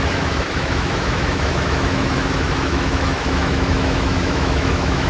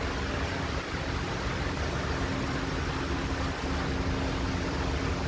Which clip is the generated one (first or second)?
first